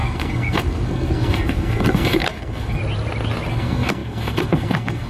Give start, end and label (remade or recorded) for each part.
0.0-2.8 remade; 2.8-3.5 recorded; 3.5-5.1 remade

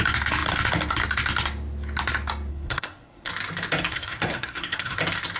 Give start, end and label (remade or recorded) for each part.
0.0-2.5 recorded; 2.5-3.3 remade; 3.3-3.9 recorded; 3.9-5.0 remade; 5.0-5.4 recorded

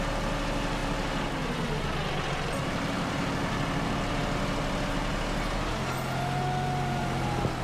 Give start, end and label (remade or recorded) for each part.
0.0-7.6 recorded